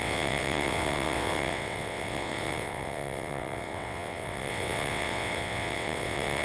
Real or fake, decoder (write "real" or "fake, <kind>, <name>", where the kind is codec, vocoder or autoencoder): fake, vocoder, WaveNeXt